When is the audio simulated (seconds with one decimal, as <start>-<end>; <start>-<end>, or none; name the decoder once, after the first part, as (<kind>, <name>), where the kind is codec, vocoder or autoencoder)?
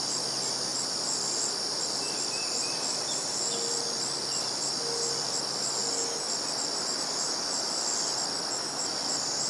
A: none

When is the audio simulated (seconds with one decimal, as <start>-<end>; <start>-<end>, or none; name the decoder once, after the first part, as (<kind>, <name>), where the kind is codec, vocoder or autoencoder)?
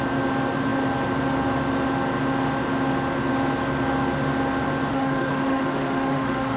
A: 4.9-6.6 (autoencoder, DAC-VAE)